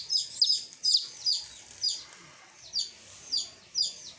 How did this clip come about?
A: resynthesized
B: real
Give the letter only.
B